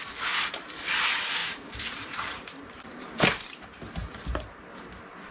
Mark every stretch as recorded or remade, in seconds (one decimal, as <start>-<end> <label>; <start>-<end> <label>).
0.0-1.4 recorded; 1.4-4.6 remade; 4.6-5.3 recorded